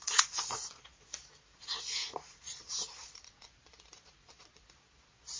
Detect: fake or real fake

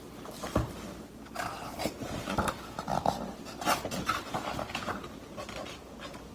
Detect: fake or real real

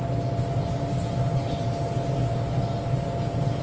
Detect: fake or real real